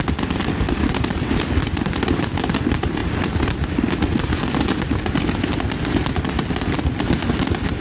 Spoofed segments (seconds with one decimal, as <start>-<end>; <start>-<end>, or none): none